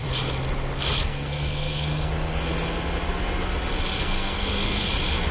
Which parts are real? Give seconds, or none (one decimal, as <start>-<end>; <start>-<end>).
0.0-1.0; 2.1-4.0; 4.8-5.3